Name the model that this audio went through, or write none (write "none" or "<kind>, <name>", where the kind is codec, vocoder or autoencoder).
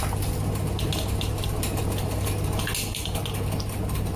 none